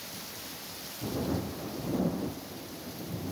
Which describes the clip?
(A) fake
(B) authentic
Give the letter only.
B